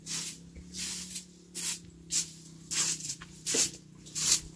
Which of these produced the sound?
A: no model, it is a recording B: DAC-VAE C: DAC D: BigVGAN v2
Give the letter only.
A